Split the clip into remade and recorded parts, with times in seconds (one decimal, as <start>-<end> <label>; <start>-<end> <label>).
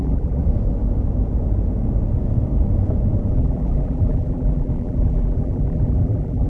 0.0-0.4 remade; 0.4-3.3 recorded; 3.3-6.5 remade